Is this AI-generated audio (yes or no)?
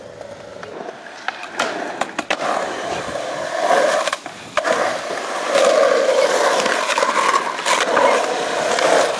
yes